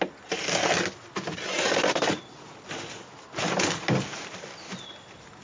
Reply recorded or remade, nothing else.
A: recorded